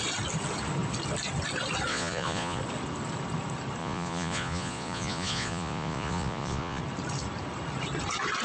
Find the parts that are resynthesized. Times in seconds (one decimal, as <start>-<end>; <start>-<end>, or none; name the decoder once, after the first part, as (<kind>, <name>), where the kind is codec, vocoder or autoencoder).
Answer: 1.9-2.6 (vocoder, Vocos); 3.8-6.8